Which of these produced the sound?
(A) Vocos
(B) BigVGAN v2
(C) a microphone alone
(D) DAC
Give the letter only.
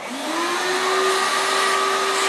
C